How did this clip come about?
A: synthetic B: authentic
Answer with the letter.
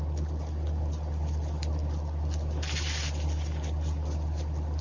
B